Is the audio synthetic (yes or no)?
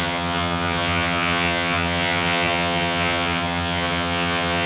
yes